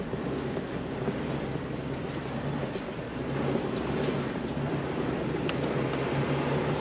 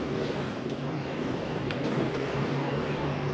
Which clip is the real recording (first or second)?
first